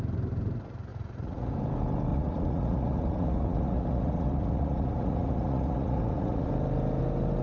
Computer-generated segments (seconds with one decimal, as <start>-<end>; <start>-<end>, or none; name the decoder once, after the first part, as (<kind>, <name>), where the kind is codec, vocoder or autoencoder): 0.9-1.5 (vocoder, Vocos); 2.1-6.5